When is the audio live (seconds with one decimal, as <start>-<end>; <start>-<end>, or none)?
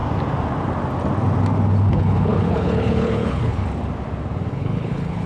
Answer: 0.0-1.9; 3.6-4.5